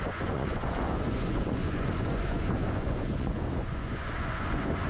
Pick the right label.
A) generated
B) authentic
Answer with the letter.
A